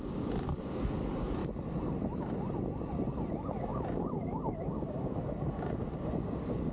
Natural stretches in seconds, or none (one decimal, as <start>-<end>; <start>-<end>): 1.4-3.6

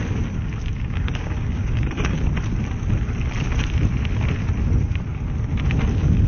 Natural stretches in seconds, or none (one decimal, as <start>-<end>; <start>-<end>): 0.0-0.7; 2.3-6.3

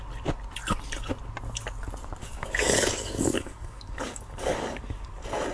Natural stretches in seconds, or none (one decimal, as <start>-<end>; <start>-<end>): 0.0-2.2; 5.1-5.5

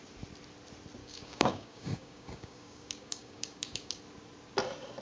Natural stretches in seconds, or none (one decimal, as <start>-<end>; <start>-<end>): 0.0-1.0; 4.0-5.0